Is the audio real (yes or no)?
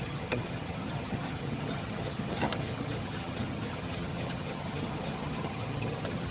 no